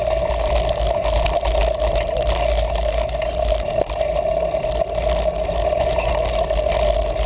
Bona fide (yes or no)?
yes